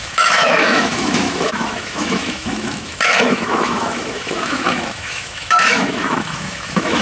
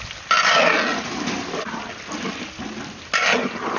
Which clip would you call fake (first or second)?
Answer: first